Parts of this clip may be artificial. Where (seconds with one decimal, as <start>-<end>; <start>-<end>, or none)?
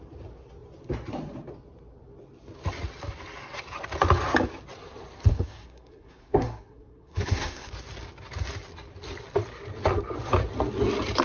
5.3-7.7